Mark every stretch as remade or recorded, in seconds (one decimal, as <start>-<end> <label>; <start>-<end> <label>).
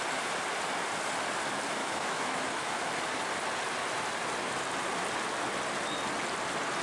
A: 0.0-1.8 recorded; 1.8-2.9 remade; 2.9-6.8 recorded